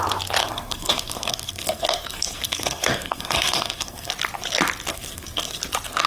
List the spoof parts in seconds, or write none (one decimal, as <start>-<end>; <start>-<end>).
0.4-4.1; 4.9-5.6